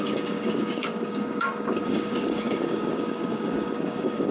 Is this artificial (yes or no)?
yes